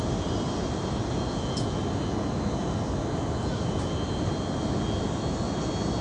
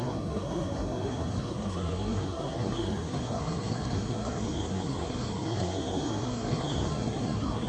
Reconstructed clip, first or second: second